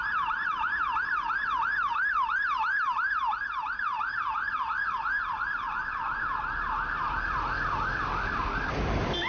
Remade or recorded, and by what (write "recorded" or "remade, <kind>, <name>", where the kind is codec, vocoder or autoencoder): remade, vocoder, BigVGAN v2